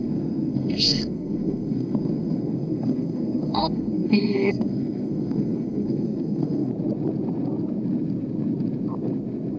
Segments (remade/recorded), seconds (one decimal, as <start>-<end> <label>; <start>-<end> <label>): 0.0-6.7 remade; 6.7-9.6 recorded